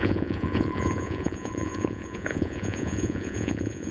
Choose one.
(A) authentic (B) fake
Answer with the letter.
B